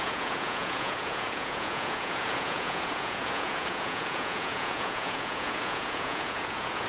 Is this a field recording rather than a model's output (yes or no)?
no